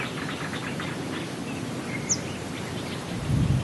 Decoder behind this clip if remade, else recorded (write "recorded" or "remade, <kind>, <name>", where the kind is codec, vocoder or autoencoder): recorded